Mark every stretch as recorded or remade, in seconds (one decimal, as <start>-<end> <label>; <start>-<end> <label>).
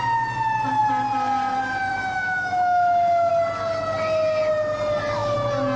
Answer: 0.0-1.9 recorded; 1.9-3.3 remade; 3.3-5.8 recorded